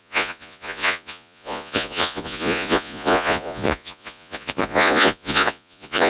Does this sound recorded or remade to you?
remade